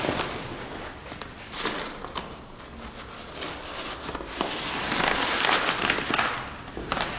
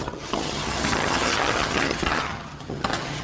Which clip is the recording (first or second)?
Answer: first